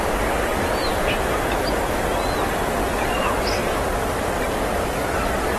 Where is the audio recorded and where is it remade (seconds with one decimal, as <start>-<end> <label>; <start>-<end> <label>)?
0.0-0.5 remade; 0.5-3.1 recorded; 3.1-5.6 remade